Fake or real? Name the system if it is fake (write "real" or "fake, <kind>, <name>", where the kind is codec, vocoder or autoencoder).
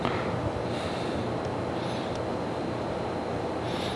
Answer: real